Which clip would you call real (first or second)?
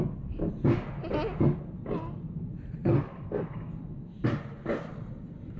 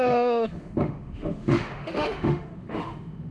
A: first